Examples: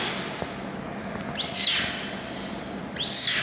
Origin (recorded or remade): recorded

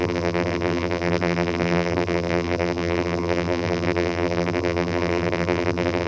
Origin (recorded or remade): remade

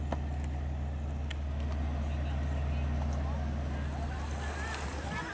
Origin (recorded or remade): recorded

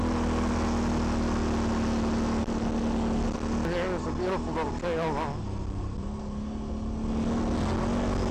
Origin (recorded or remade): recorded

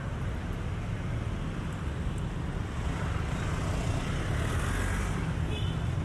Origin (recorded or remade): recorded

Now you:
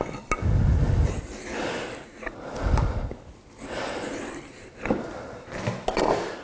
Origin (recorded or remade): recorded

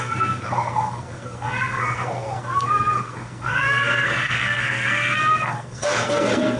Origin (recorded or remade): remade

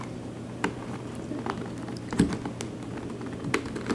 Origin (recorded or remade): recorded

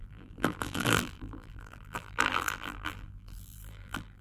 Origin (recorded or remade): remade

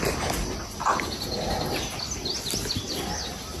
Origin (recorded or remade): recorded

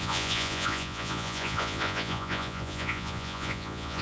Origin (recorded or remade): remade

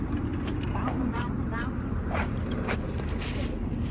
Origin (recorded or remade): remade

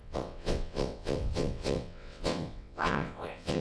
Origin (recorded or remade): remade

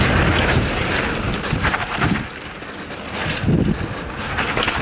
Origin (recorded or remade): recorded